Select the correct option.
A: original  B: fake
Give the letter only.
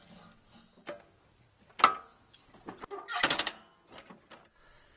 A